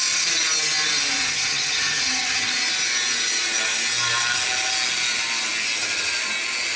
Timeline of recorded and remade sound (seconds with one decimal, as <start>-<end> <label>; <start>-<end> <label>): 0.0-1.2 recorded; 1.2-2.5 remade; 2.5-6.8 recorded